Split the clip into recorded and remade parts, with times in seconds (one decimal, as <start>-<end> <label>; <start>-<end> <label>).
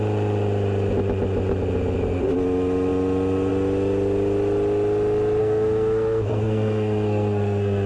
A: 0.0-5.4 recorded; 5.4-7.9 remade